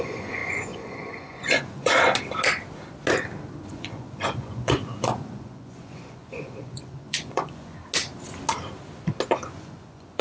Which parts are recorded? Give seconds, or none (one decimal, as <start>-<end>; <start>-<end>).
1.9-3.7; 7.8-9.5